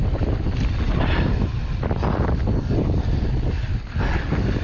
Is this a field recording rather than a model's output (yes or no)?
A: yes